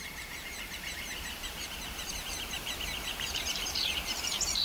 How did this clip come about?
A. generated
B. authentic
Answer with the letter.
A